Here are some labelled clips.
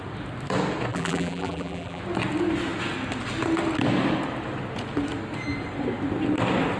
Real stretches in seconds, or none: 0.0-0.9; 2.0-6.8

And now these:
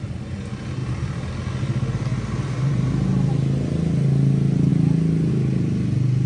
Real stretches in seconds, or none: 0.0-6.3

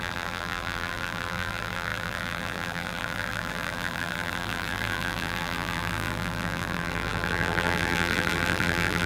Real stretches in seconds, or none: none

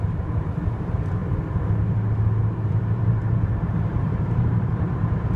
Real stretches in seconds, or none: 1.2-2.7; 3.2-4.0

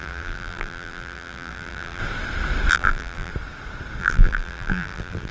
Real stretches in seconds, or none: 2.0-2.7; 3.3-4.0

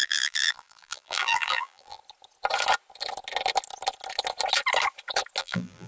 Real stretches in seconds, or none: 2.0-5.4

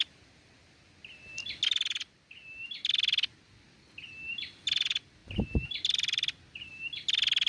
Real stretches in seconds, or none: 0.0-5.2; 6.7-7.5